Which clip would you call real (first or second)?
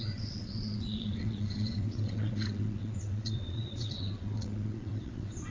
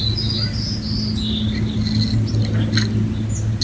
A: second